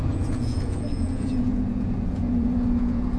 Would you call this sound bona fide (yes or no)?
no